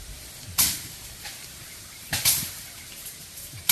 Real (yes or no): no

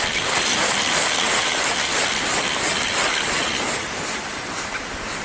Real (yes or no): yes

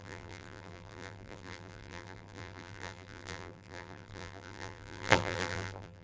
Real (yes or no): no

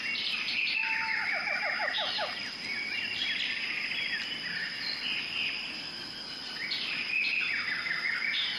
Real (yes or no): no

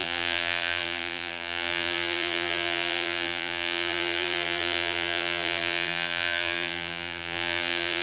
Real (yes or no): no